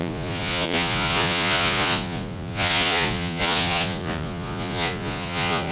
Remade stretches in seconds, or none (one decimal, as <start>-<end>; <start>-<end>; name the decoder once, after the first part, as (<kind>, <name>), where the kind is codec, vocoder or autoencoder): 0.0-5.7 (vocoder, Vocos)